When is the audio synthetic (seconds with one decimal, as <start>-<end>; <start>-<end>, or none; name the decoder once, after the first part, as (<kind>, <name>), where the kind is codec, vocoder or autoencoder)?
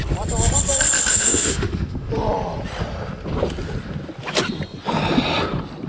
1.1-2.1 (autoencoder, DAC-VAE)